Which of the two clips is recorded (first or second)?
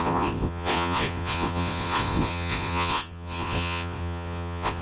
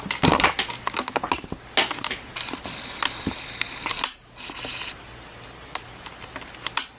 second